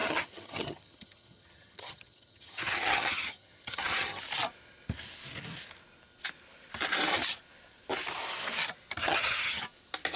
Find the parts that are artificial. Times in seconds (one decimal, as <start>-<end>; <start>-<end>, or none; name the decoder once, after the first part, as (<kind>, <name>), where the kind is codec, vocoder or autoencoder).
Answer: 0.0-4.2 (vocoder, HiFi-GAN); 9.0-9.6